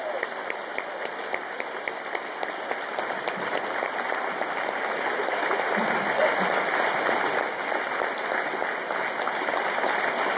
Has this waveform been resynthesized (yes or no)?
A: no